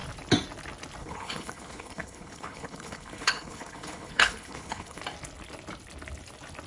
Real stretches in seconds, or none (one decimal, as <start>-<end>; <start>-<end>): 0.0-1.0; 5.0-6.7